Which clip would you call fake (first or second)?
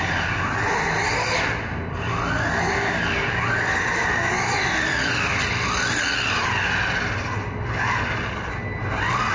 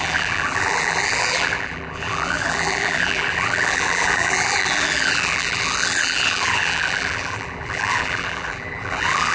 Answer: second